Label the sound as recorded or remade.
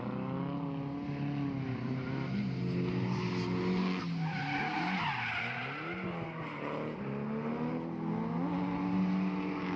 recorded